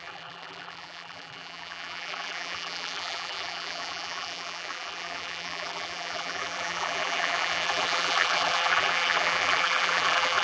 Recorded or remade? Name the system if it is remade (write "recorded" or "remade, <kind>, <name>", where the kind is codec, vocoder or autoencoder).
remade, vocoder, BigVGAN v2